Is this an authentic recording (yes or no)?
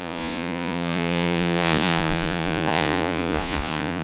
no